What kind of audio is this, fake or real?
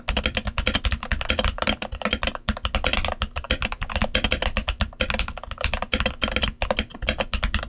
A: real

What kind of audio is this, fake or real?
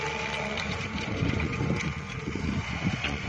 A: fake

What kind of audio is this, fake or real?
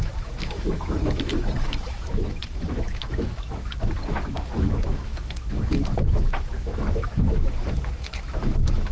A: fake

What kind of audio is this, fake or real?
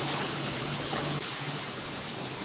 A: fake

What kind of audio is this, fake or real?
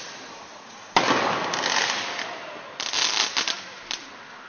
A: real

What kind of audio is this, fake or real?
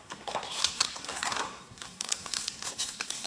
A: fake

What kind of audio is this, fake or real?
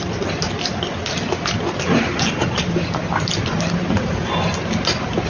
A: real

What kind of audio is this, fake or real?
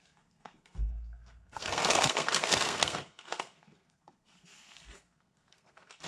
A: fake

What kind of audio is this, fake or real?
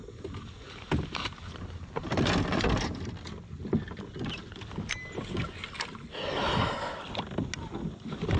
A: real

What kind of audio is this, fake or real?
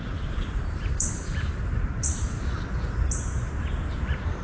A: fake